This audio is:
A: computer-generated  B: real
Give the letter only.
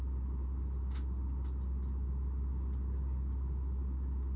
B